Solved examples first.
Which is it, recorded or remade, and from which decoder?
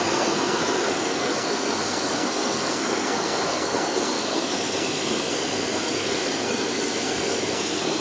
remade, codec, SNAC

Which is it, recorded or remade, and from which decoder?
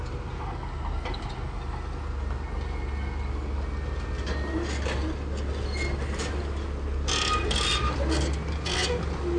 recorded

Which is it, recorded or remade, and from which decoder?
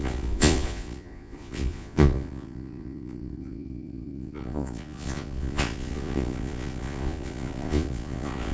remade, vocoder, Vocos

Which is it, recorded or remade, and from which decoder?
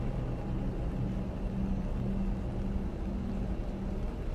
recorded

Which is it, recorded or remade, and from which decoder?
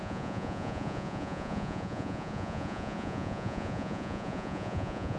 remade, vocoder, Vocos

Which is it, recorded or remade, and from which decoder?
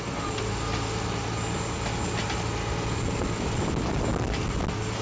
recorded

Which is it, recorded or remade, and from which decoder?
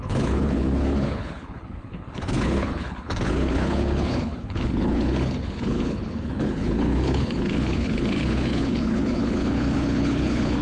remade, codec, HILCodec